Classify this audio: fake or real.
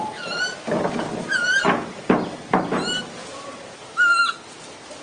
real